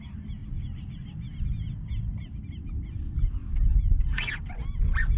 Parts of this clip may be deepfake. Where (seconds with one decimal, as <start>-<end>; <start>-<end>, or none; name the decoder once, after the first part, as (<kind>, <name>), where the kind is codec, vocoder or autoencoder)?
3.4-4.0 (vocoder, BigVGAN v2)